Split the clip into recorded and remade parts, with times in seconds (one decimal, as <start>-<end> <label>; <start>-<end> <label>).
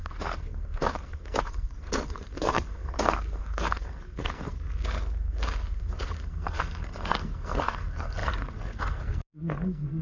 0.0-10.0 remade